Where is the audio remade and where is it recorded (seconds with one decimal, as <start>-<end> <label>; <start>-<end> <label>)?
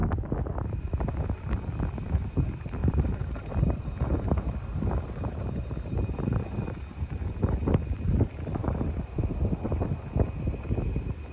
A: 0.0-2.8 recorded; 2.8-6.4 remade; 6.4-8.6 recorded; 8.6-9.3 remade; 9.3-11.3 recorded